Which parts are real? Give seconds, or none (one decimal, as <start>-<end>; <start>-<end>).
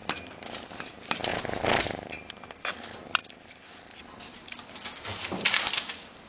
0.0-6.3